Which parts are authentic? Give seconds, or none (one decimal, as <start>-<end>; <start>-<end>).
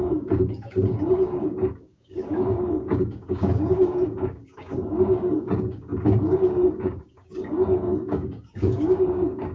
none